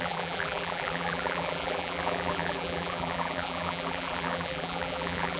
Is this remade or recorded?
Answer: remade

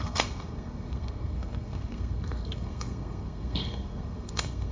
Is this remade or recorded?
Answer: remade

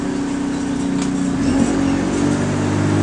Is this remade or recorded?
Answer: recorded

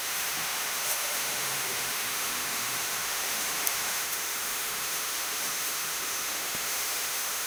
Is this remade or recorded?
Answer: remade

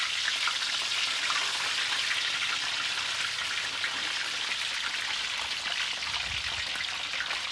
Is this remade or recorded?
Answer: recorded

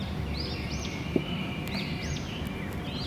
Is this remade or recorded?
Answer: recorded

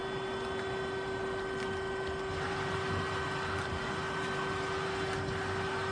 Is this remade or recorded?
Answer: recorded